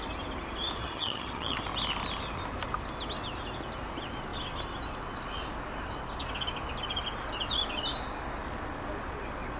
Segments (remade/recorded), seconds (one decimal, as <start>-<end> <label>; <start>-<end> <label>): 0.0-0.8 recorded; 0.8-1.6 remade; 1.6-9.6 recorded